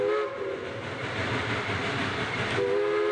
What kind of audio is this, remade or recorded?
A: recorded